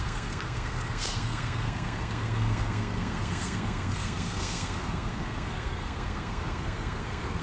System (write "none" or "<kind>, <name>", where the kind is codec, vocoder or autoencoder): codec, SNAC